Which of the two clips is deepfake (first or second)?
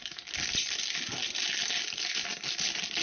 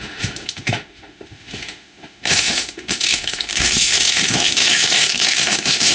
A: second